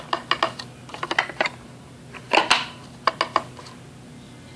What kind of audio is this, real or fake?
real